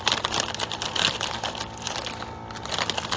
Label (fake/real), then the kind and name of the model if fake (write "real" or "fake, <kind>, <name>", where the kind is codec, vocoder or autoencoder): real